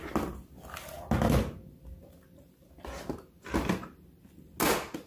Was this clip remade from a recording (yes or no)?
no